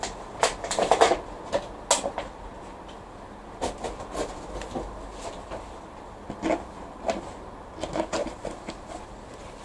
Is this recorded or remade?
recorded